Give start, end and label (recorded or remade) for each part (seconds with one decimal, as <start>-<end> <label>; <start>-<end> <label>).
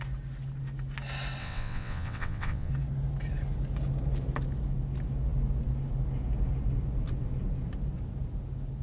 0.0-1.4 recorded; 1.4-2.7 remade; 2.7-8.8 recorded